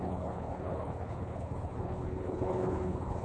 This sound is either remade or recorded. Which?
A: remade